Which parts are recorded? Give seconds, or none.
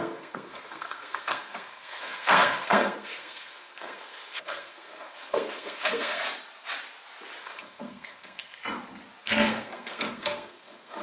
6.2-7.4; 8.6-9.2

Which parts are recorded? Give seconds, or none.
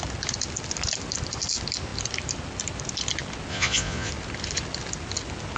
0.0-3.5; 4.1-5.6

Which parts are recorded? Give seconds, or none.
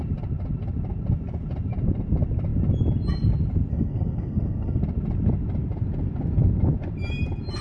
0.0-3.7; 4.8-7.6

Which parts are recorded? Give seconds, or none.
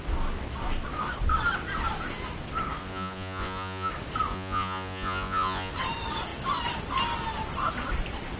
0.0-2.8; 3.9-4.3; 5.7-8.4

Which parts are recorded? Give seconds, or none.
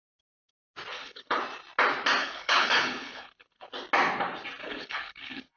0.0-0.9; 1.4-2.2; 3.7-4.6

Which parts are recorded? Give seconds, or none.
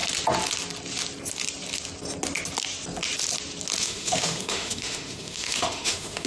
0.0-3.8